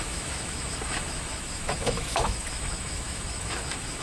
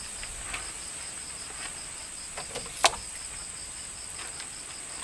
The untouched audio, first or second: second